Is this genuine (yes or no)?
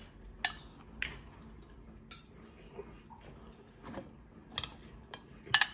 yes